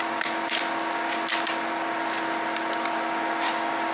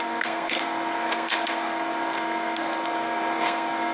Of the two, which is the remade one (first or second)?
second